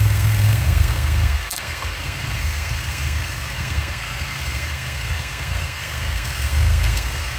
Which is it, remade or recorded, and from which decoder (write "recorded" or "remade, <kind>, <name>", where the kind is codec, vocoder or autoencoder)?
remade, codec, SNAC